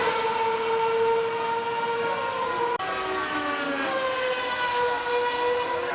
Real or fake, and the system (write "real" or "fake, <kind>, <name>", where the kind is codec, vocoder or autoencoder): real